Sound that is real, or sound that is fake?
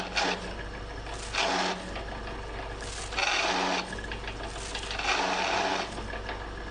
real